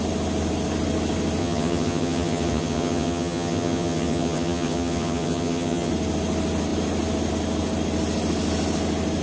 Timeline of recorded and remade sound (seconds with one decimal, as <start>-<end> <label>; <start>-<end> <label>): 0.0-1.4 recorded; 1.4-5.9 remade; 5.9-9.2 recorded